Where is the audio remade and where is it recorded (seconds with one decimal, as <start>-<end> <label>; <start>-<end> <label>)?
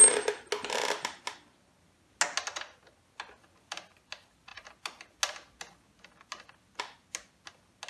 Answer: 0.0-7.9 recorded